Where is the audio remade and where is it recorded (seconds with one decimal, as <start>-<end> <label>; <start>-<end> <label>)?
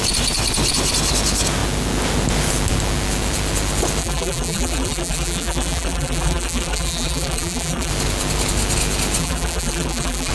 0.0-4.0 recorded; 4.0-7.9 remade; 7.9-9.2 recorded; 9.2-10.3 remade